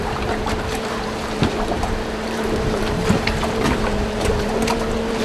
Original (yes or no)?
no